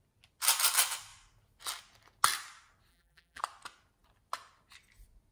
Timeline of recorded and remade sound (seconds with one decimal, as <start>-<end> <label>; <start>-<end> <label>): 0.0-2.9 recorded; 2.9-3.4 remade; 3.4-5.3 recorded